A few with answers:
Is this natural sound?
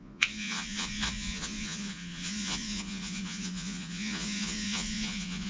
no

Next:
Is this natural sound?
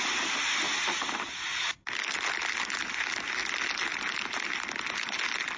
yes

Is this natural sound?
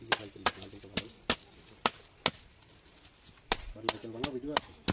yes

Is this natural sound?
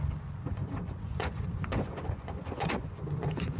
no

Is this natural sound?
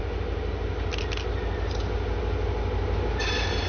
yes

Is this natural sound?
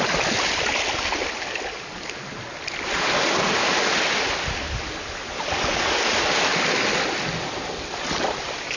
yes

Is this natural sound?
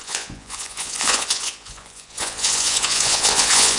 no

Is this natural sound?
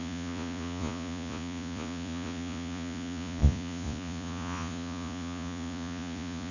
no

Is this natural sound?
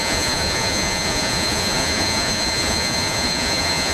no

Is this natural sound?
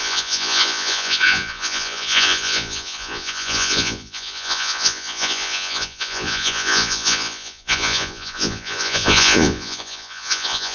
no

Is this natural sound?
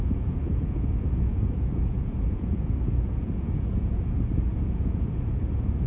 no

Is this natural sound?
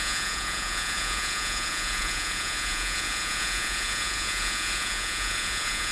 no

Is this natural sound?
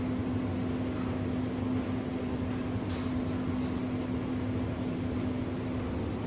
yes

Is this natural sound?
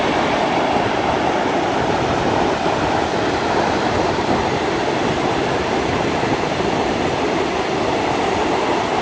yes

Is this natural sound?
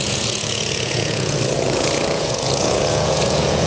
no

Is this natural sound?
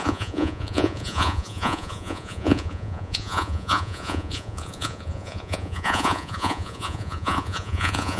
no